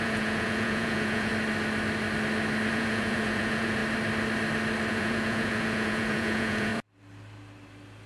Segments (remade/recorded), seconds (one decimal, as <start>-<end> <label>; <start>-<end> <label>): 0.0-1.3 remade; 1.3-2.7 recorded; 2.7-3.8 remade; 3.8-4.9 recorded; 4.9-6.7 remade; 6.7-8.1 recorded